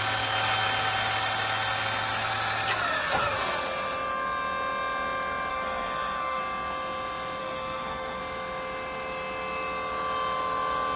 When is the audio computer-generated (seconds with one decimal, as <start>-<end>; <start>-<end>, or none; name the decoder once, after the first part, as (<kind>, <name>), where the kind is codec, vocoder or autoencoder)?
5.5-6.4 (codec, SNAC); 7.4-8.2